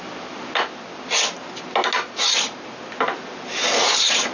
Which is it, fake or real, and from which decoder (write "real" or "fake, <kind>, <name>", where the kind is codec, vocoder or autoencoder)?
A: real